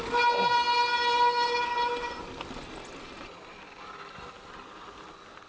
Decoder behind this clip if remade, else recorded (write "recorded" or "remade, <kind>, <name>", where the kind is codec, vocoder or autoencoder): recorded